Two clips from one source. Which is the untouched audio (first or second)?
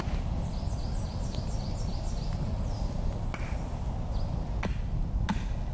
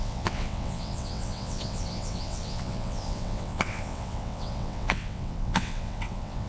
first